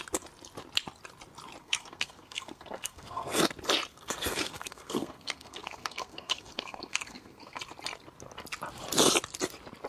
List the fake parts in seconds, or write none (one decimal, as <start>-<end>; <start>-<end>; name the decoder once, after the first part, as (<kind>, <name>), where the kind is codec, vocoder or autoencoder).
1.6-3.5 (codec, SNAC); 3.9-7.6